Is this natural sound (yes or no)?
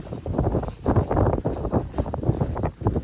yes